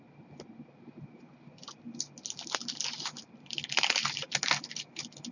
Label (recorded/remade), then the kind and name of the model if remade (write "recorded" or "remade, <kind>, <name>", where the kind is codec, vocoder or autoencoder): recorded